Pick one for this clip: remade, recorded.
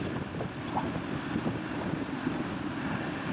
recorded